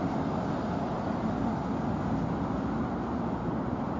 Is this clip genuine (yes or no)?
yes